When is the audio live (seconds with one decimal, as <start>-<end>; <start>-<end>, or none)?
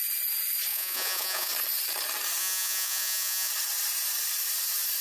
0.0-0.7; 1.5-2.4; 3.5-5.0